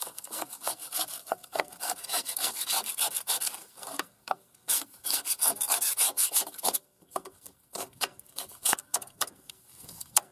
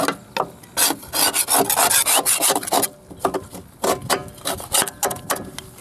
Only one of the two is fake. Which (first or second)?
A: first